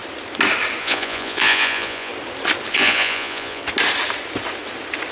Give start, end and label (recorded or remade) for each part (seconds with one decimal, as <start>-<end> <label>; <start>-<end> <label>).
0.0-0.8 recorded; 0.8-2.1 remade; 2.1-2.7 recorded; 2.7-3.6 remade; 3.6-5.1 recorded